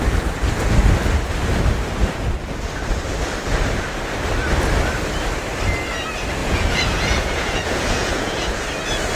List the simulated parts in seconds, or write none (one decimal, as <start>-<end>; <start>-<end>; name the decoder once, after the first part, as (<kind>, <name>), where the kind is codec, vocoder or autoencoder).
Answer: 6.4-8.6 (vocoder, Vocos)